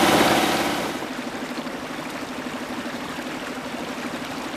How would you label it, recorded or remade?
recorded